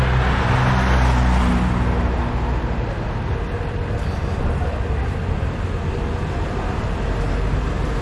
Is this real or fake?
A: real